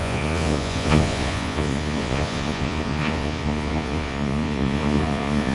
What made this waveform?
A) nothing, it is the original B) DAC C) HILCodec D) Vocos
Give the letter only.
D